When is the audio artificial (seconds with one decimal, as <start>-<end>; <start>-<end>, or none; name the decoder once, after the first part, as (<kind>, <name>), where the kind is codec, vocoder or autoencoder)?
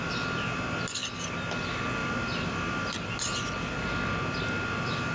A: 2.0-3.1 (vocoder, BigVGAN v2)